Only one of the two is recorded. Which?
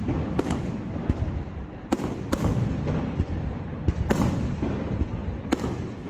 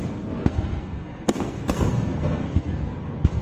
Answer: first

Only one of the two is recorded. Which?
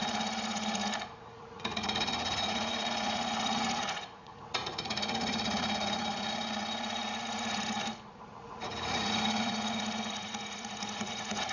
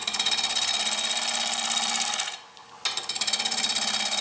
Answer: second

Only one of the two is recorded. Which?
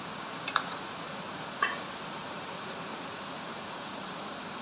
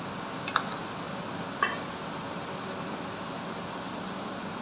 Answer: second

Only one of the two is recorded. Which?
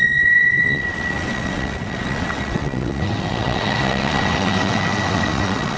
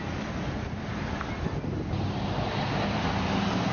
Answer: second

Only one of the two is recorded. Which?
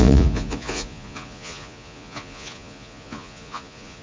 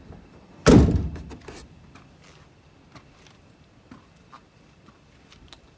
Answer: second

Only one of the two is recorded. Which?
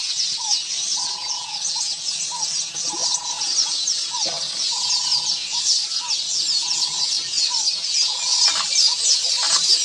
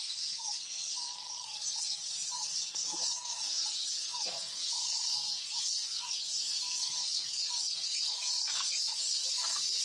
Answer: first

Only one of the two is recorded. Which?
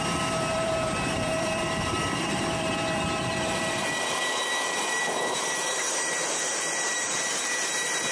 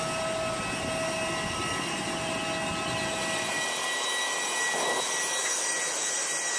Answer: second